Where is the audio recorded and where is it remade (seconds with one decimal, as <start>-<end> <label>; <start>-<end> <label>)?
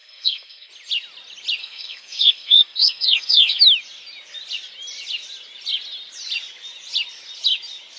0.0-0.7 remade; 0.7-1.6 recorded; 1.6-3.6 remade; 3.6-8.0 recorded